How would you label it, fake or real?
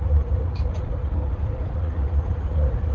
fake